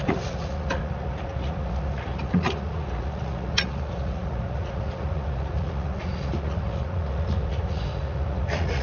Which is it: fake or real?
fake